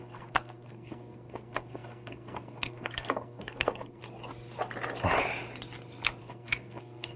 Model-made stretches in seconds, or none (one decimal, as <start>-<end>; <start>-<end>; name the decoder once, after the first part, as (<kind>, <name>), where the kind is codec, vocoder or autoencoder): 0.0-4.0 (codec, SNAC); 6.2-7.2